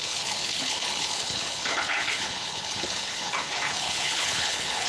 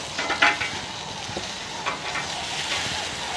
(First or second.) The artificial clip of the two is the first